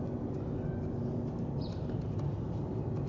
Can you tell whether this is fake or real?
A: real